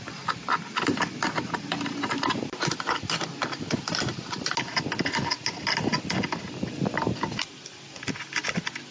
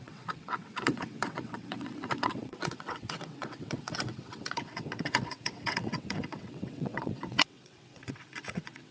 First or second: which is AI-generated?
second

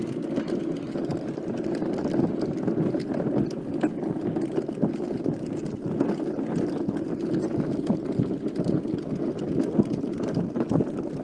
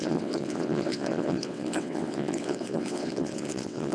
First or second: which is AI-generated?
second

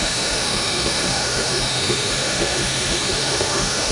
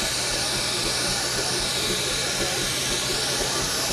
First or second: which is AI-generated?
first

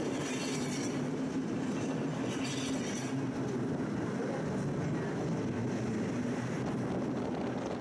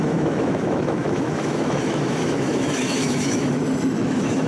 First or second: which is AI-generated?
second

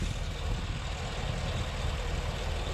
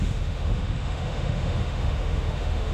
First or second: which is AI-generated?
second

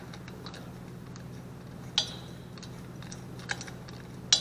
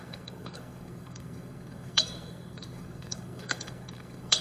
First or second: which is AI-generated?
second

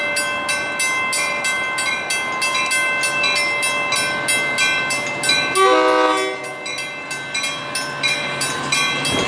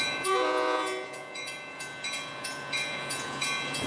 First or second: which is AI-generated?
second